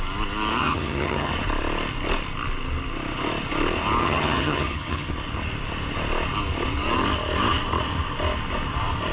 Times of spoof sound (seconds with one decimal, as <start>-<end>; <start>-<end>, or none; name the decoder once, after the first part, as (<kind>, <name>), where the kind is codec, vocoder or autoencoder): 0.6-1.3 (vocoder, HiFi-GAN); 4.0-5.1